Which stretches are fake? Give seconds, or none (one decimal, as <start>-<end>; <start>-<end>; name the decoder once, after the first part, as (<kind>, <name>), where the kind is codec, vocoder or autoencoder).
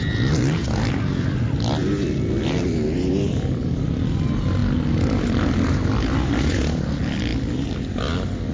none